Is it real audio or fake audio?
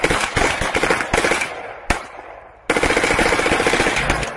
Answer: real